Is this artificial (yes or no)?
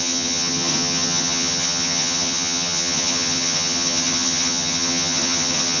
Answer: yes